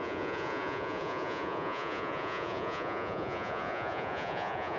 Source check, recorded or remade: remade